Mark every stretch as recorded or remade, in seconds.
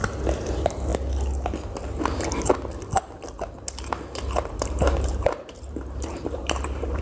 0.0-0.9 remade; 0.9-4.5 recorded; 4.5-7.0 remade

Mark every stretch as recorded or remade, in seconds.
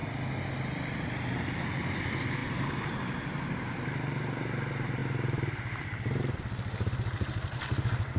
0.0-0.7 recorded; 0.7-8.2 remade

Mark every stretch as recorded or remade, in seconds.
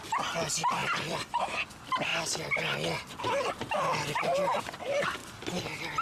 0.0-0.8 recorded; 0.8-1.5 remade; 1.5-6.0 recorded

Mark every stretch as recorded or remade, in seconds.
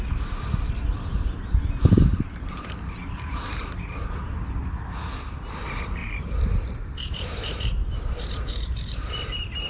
0.0-0.9 recorded; 0.9-3.6 remade; 3.6-6.0 recorded; 6.0-9.2 remade; 9.2-9.7 recorded